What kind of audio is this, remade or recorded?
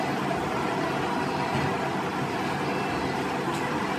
recorded